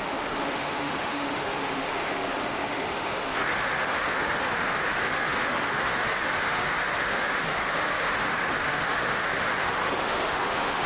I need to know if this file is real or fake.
fake